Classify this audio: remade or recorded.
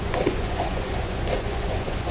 remade